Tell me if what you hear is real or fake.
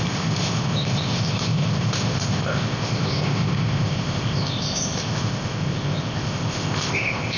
fake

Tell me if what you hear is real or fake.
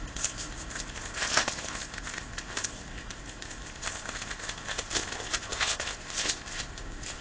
fake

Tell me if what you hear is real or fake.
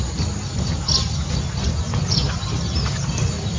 real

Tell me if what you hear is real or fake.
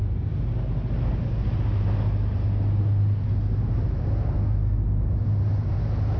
real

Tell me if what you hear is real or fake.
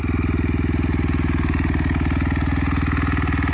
real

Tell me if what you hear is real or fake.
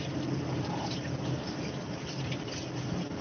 real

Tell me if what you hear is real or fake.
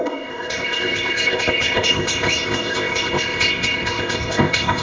fake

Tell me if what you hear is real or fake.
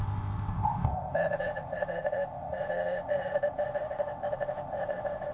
fake